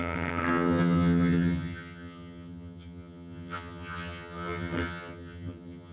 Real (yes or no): no